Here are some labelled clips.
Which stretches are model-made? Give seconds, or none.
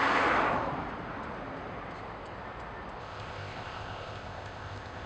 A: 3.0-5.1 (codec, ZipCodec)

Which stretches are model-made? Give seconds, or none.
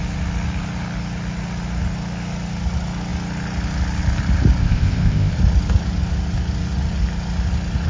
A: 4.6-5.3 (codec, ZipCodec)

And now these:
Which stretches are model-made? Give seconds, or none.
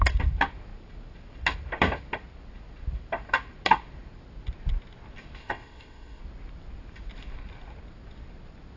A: 5.4-6.2 (codec, ZipCodec)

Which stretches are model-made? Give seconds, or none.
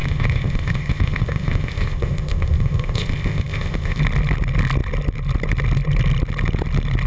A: 0.0-4.0 (codec, ZipCodec)